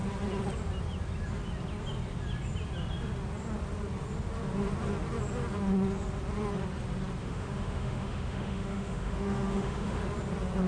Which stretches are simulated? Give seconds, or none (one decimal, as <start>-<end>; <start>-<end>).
7.2-10.0